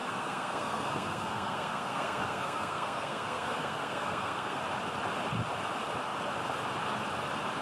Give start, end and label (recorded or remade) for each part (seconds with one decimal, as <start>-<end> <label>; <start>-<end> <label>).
0.0-4.6 remade; 4.6-7.6 recorded